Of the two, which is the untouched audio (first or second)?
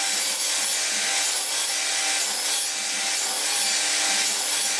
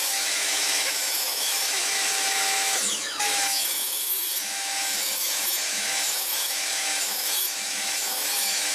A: first